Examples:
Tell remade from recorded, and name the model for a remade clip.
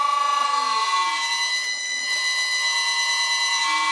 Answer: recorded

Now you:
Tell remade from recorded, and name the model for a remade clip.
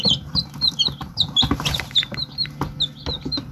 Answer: recorded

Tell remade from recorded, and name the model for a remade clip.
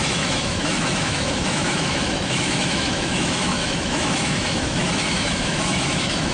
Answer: remade, autoencoder, DAC-VAE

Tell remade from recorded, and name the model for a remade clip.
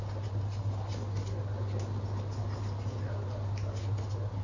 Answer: recorded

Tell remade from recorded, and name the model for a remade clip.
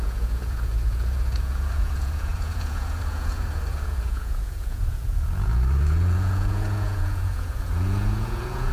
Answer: remade, vocoder, Vocos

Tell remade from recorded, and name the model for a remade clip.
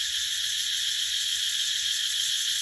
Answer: remade, vocoder, Vocos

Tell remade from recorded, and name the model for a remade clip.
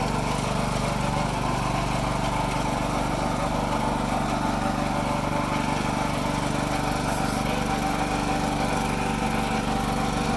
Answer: recorded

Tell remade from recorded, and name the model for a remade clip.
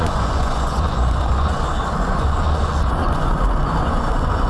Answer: remade, vocoder, Vocos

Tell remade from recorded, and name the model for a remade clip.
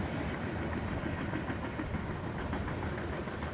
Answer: recorded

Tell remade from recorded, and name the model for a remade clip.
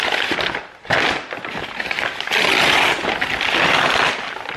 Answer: recorded